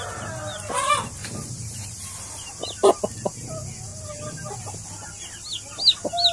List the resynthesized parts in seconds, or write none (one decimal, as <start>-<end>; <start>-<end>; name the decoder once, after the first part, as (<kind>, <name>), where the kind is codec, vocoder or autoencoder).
1.2-3.0 (vocoder, BigVGAN v2); 3.9-4.6